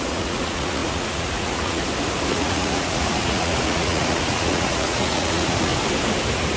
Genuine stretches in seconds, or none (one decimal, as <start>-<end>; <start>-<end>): 1.8-2.3; 5.7-6.6